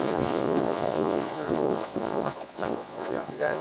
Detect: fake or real fake